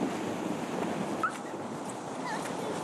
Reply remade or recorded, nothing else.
recorded